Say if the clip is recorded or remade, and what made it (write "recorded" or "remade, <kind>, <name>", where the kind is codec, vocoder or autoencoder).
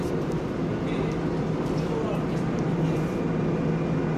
recorded